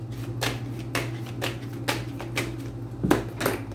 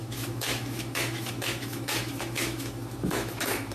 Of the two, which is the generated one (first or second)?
second